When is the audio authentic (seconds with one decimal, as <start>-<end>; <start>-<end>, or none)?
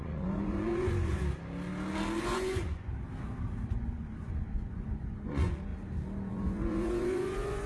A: 1.2-2.2; 2.9-3.7; 5.7-6.3